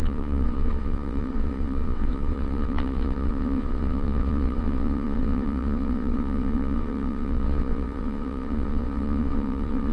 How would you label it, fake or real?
fake